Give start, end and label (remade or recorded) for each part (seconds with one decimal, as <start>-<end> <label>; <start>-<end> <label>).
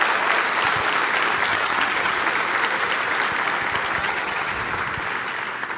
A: 0.0-1.5 recorded; 1.5-2.2 remade; 2.2-4.0 recorded; 4.0-4.5 remade; 4.5-5.8 recorded